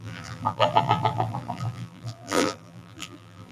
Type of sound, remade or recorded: remade